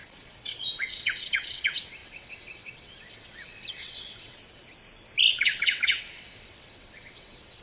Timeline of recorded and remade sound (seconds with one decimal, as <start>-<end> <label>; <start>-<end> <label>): 0.0-4.4 remade; 4.4-5.3 recorded; 5.3-7.6 remade